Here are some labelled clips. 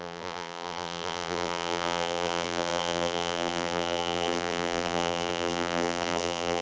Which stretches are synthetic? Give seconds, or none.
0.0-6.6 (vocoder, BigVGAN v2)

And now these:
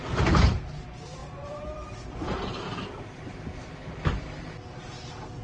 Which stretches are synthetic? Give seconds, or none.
1.2-4.4 (vocoder, BigVGAN v2)